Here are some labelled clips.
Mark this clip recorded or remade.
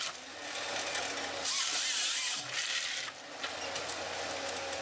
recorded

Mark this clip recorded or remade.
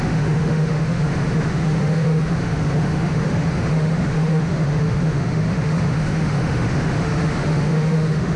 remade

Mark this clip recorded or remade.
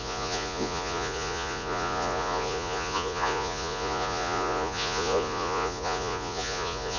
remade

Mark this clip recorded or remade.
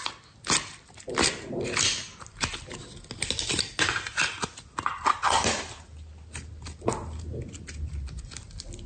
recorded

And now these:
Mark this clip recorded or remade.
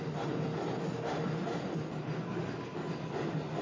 recorded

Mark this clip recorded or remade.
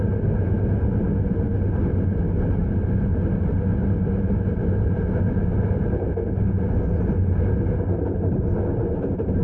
recorded